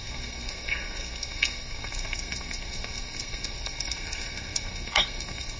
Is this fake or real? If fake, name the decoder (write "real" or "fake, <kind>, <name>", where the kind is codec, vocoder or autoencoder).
fake, codec, SNAC